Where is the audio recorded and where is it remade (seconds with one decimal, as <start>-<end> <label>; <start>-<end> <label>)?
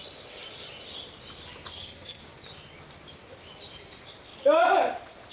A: 0.0-1.7 recorded; 1.7-2.2 remade; 2.2-5.3 recorded